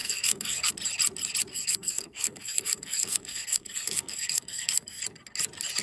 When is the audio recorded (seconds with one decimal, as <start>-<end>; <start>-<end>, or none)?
0.7-1.5; 5.0-5.8